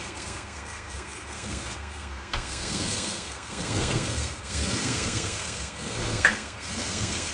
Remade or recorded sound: remade